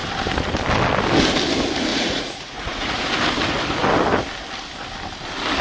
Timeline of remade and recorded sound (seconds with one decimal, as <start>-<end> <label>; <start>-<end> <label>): 0.0-1.9 recorded; 1.9-3.1 remade; 3.1-5.6 recorded